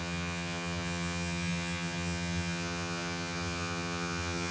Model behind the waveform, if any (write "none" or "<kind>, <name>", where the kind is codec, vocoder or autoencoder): vocoder, HiFi-GAN